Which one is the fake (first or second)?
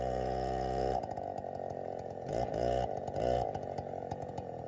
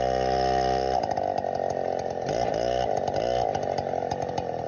first